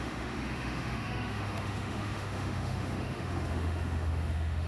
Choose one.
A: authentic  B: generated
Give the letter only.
B